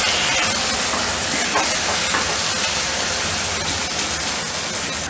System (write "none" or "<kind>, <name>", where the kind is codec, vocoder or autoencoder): none